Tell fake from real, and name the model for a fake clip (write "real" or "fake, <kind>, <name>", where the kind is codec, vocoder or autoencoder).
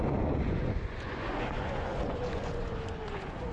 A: fake, vocoder, Vocos